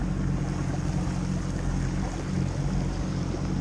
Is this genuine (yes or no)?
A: yes